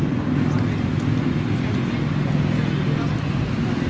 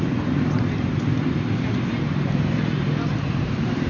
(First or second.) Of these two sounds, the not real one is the second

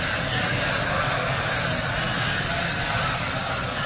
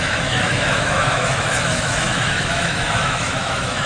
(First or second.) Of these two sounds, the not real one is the second